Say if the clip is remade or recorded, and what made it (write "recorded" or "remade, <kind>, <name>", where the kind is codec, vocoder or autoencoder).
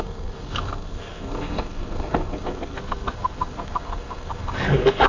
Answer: remade, codec, SNAC